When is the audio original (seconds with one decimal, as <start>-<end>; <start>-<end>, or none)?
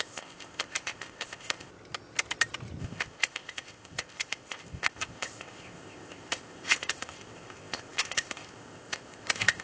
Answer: 1.7-2.8